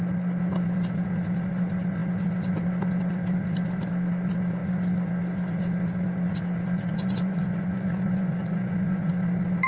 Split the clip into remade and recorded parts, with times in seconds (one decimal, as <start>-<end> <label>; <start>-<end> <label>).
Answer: 0.0-6.9 recorded; 6.9-9.1 remade; 9.1-9.7 recorded